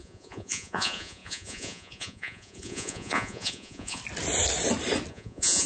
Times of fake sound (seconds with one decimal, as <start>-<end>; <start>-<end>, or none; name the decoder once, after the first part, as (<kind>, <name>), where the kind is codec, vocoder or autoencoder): 0.0-4.0 (vocoder, Vocos); 5.1-5.7